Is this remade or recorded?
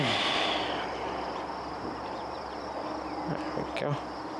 recorded